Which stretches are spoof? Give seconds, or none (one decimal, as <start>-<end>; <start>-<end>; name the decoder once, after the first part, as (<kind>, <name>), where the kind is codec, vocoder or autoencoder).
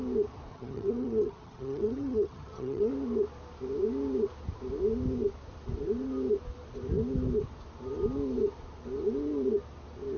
0.5-2.9 (vocoder, HiFi-GAN)